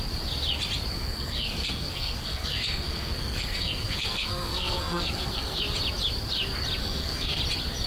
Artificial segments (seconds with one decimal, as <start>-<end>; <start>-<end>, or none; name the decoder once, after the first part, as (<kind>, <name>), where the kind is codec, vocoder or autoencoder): 0.9-5.6 (codec, SNAC); 6.8-7.4